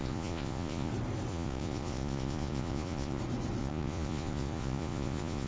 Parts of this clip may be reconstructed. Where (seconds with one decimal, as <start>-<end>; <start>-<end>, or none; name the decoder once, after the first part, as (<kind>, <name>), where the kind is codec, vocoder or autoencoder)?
0.0-0.9 (vocoder, Vocos); 1.3-3.2; 3.6-5.5